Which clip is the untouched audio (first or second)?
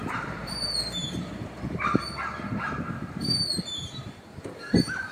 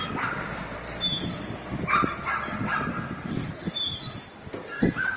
second